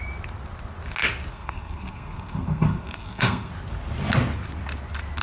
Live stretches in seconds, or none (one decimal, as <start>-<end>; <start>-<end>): 0.0-1.3; 3.5-5.2